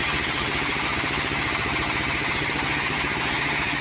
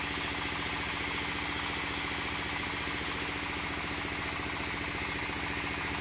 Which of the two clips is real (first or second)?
second